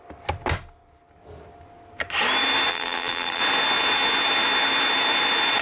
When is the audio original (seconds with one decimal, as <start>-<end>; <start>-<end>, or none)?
0.0-2.7; 3.4-5.6